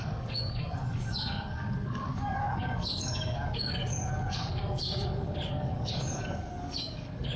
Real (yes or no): no